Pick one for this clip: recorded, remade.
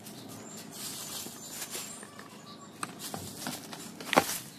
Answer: recorded